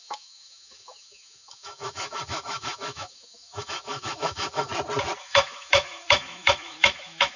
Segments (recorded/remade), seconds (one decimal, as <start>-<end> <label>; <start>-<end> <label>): 0.0-4.7 remade; 4.7-5.2 recorded; 5.2-7.4 remade